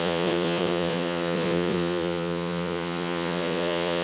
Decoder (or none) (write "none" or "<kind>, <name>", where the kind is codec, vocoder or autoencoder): vocoder, Vocos